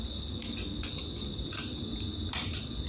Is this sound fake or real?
real